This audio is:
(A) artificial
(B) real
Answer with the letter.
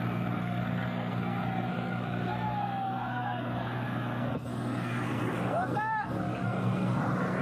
A